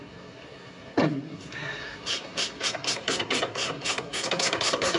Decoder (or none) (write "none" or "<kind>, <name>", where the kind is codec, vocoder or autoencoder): codec, SNAC